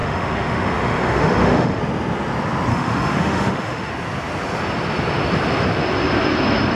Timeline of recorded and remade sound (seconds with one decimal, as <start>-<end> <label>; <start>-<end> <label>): 0.0-1.8 remade; 1.8-2.7 recorded; 2.7-3.9 remade; 3.9-6.8 recorded